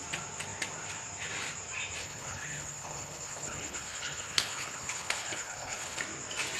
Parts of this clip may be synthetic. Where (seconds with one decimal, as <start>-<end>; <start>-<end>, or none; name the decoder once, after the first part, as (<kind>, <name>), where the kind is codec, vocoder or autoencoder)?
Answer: 2.0-6.0 (codec, HILCodec)